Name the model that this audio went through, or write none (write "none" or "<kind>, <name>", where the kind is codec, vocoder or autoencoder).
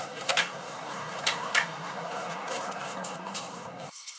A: codec, SNAC